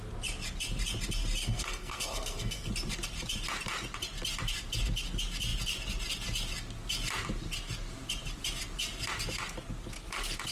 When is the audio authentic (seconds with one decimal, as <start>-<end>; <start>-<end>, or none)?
0.0-1.4; 2.7-10.5